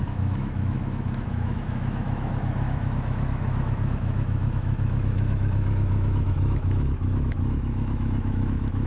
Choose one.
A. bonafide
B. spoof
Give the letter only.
B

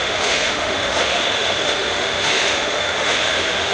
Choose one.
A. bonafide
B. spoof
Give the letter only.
B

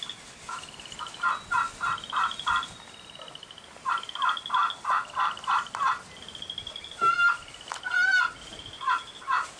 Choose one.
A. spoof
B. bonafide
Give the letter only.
B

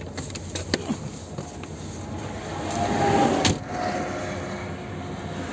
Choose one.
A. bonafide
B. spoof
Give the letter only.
A